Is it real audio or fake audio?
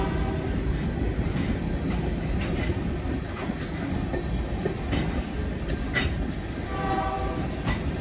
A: real